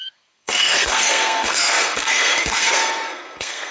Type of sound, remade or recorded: remade